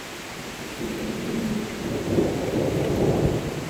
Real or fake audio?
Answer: real